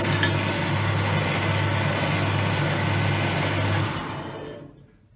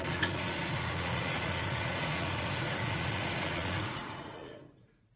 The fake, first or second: second